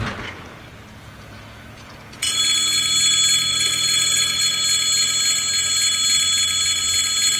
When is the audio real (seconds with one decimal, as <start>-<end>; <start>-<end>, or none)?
0.0-1.0; 2.4-3.5; 4.4-7.4

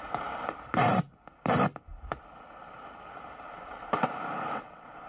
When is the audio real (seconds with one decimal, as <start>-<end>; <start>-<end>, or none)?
none

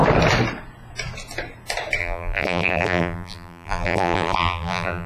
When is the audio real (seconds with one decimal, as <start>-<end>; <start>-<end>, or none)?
0.0-2.0

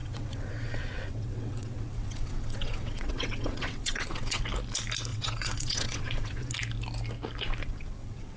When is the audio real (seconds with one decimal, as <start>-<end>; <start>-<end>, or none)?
4.4-5.1; 6.5-7.6

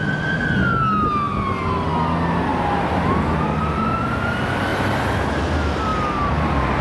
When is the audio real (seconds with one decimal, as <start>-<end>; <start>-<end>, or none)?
0.0-6.8

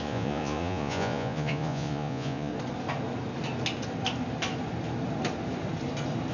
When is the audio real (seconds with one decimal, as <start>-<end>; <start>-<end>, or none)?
2.5-6.3

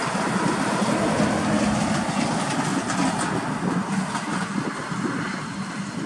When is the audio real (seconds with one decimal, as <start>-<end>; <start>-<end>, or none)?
0.0-6.1